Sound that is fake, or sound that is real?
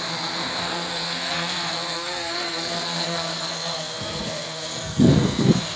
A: fake